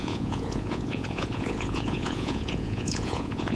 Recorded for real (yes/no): no